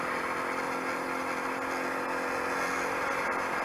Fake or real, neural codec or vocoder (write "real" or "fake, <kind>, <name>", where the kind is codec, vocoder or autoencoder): real